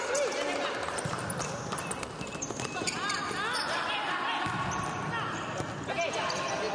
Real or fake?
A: real